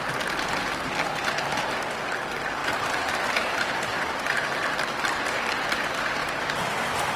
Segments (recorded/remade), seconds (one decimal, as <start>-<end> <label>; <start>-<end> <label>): 0.0-2.6 recorded; 2.6-4.2 remade; 4.2-6.2 recorded; 6.2-7.2 remade